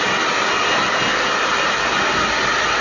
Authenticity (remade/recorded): recorded